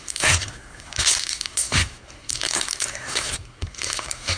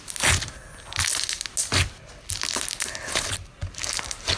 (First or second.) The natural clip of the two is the second